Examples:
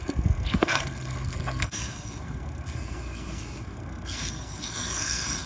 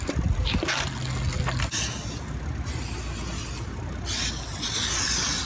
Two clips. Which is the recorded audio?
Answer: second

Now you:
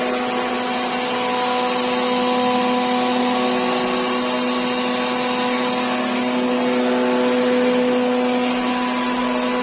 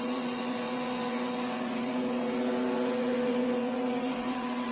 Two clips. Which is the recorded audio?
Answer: first